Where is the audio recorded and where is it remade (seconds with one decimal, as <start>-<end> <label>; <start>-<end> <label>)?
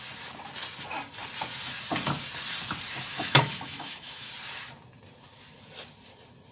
0.0-3.1 recorded; 3.1-4.3 remade; 4.3-6.5 recorded